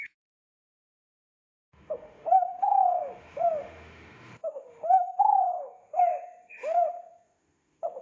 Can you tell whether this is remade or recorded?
remade